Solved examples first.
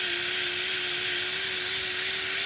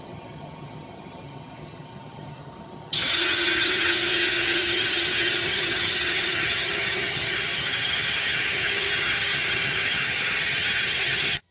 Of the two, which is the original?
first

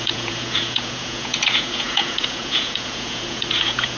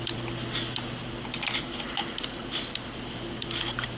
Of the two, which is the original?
second